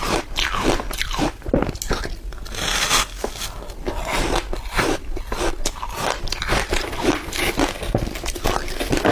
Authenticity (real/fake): real